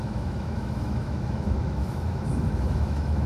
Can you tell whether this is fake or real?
fake